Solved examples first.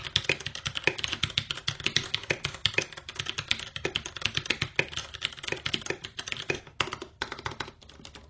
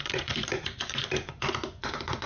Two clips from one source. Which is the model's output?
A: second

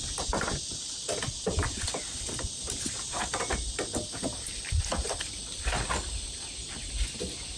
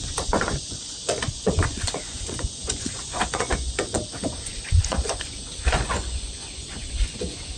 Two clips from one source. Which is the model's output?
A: second